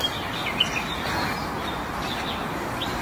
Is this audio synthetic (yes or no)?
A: no